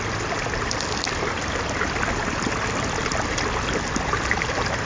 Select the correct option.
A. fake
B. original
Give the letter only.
B